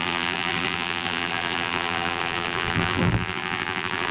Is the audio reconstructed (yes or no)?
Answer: yes